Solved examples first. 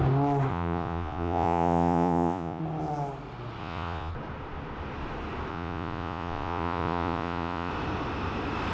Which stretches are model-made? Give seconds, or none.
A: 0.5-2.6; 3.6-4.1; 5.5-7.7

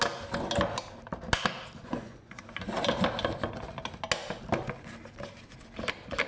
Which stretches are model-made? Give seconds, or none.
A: 1.8-2.4

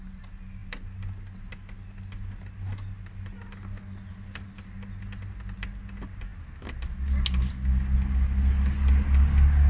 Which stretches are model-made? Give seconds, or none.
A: none

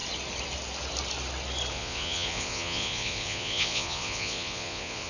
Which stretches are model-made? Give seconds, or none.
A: 1.7-5.1

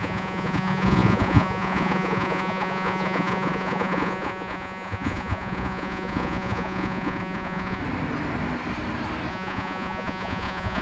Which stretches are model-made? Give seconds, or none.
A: 0.0-7.8; 9.3-10.8

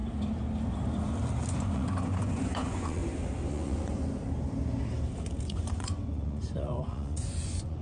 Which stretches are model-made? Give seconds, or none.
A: 1.5-3.0; 3.5-4.0; 5.4-7.8

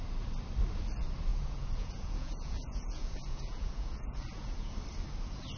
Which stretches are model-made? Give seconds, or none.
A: 1.3-4.7

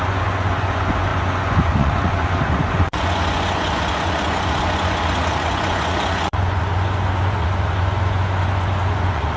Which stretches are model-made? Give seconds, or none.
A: 0.0-9.4